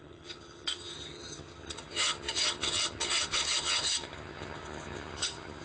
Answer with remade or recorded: remade